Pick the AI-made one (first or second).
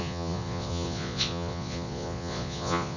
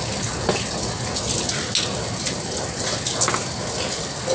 first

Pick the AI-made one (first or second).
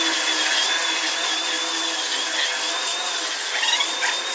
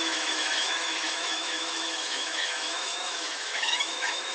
second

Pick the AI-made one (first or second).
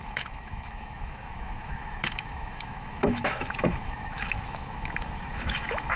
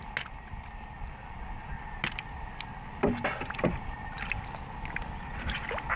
first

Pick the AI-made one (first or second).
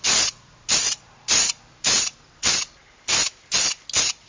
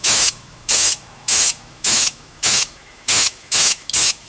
second